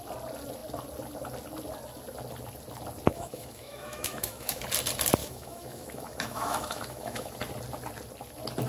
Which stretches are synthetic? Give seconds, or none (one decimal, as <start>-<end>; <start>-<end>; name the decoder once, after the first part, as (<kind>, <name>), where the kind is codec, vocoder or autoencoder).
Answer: 3.1-4.6 (autoencoder, DAC-VAE); 5.2-7.3